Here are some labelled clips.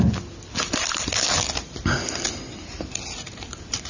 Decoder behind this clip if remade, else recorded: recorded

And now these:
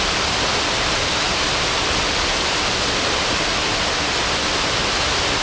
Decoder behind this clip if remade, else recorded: recorded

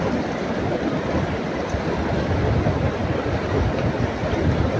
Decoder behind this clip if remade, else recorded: recorded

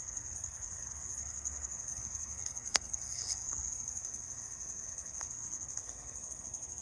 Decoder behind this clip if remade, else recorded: remade, codec, SNAC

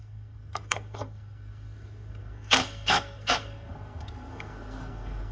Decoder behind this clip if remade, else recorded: remade, codec, SNAC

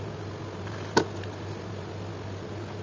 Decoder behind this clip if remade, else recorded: recorded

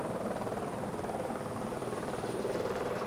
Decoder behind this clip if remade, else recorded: remade, vocoder, BigVGAN v2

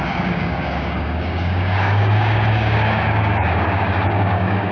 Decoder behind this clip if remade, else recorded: remade, codec, DAC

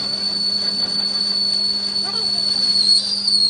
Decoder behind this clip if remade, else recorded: recorded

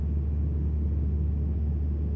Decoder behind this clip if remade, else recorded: recorded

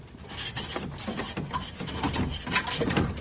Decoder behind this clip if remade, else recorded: recorded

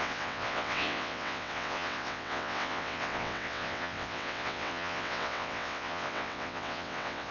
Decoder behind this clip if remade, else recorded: remade, vocoder, WaveNeXt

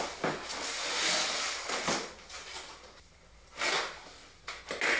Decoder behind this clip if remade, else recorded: recorded